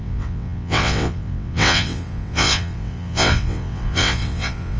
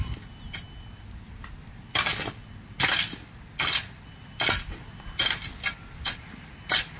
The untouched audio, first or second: second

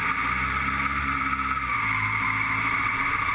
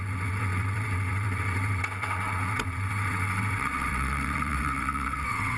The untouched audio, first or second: first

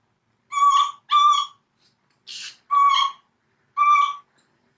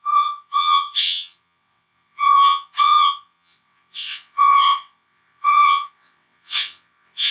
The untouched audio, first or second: first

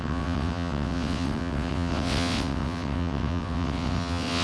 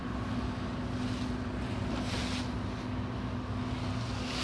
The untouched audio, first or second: second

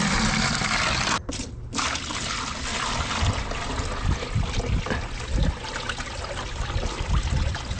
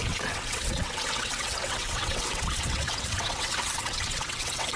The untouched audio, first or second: first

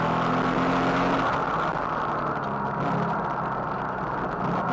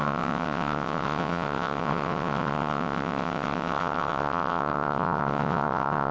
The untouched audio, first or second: first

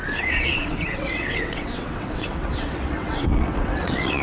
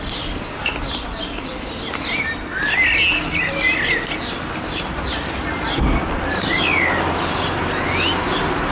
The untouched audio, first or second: second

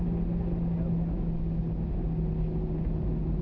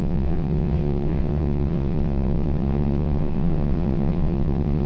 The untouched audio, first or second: first